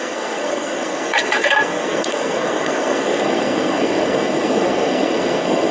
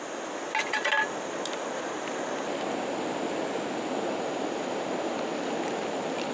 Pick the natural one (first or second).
second